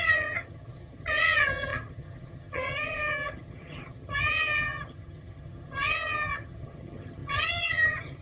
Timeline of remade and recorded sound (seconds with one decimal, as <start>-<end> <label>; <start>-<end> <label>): 0.0-8.2 remade